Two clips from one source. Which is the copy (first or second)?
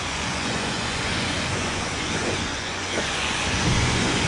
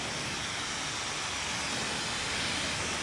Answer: first